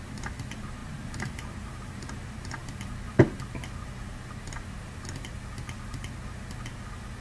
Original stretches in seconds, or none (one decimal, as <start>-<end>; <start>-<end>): 0.0-0.8; 2.1-7.2